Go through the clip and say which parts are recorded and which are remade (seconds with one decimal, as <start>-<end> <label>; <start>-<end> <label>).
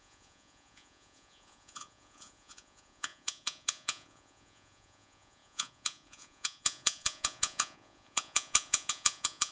0.0-9.5 remade